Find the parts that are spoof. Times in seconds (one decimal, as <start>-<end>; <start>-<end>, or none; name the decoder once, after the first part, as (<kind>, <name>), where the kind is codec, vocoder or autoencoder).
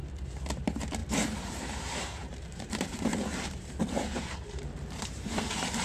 0.6-5.8 (vocoder, BigVGAN v2)